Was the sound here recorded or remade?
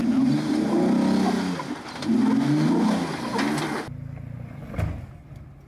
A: recorded